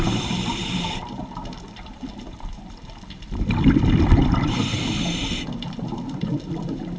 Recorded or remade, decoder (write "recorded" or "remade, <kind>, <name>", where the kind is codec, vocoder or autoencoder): remade, vocoder, BigVGAN v2